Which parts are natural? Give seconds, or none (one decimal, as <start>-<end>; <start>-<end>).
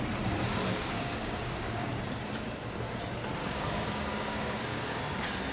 0.0-0.7; 1.9-3.4; 5.0-5.5